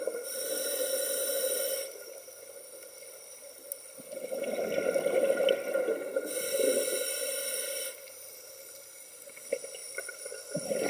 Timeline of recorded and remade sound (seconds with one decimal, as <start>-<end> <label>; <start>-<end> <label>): 0.0-10.9 recorded